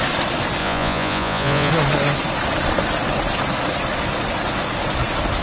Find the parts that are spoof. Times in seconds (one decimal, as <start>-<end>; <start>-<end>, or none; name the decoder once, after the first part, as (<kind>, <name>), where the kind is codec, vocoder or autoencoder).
0.6-1.7 (vocoder, Vocos)